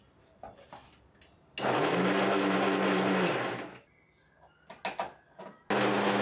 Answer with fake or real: real